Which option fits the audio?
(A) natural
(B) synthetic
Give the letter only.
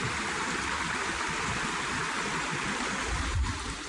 A